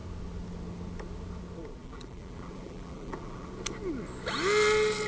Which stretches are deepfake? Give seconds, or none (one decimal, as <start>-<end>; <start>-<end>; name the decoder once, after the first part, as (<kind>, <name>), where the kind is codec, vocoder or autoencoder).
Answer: 1.8-3.5 (vocoder, BigVGAN v2)